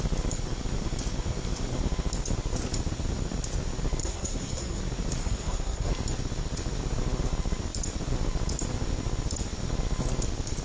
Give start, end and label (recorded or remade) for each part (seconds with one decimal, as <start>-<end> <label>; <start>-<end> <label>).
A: 0.0-4.0 recorded; 4.0-4.8 remade; 4.8-5.2 recorded; 5.2-5.9 remade; 5.9-10.6 recorded